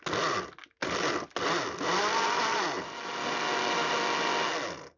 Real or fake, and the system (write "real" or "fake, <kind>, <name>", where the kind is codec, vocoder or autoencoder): real